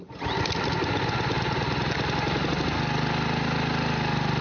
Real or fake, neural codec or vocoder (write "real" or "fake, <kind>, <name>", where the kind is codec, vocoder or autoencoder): real